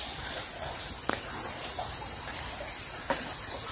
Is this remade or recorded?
recorded